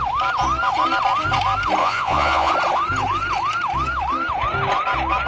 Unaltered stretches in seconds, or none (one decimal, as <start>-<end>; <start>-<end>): 0.0-1.8; 2.5-5.3